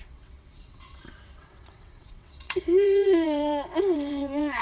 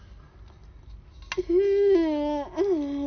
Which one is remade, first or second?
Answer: first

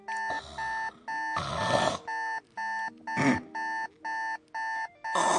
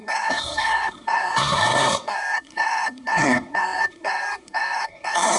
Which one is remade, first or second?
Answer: second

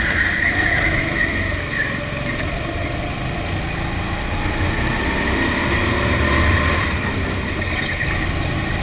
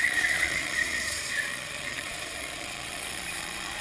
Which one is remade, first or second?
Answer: second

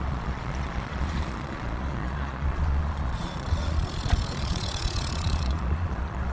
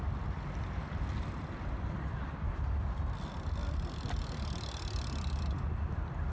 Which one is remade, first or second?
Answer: first